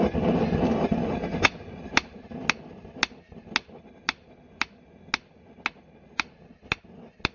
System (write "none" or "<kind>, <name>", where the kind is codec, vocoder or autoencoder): none